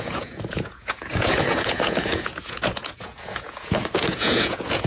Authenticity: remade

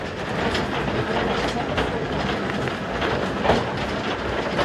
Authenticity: recorded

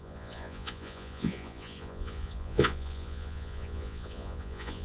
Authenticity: remade